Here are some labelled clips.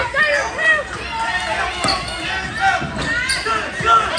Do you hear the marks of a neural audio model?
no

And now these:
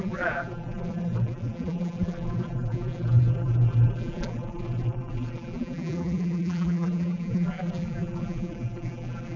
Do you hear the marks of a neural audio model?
yes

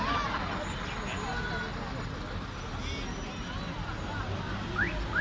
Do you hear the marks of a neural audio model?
no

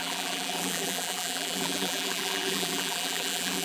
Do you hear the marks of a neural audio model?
yes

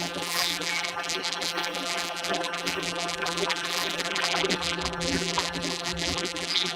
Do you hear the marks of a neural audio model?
yes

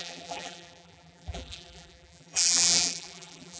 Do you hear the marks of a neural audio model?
yes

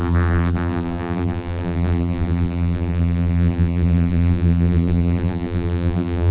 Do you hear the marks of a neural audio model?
yes